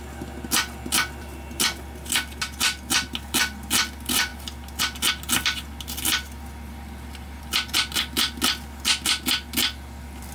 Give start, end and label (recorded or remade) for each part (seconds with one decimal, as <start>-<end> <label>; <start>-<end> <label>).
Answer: 0.0-10.3 recorded